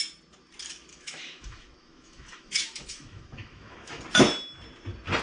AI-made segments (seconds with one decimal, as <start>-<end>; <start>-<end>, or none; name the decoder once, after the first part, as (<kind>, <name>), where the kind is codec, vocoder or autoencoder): 0.9-4.0 (autoencoder, DAC-VAE)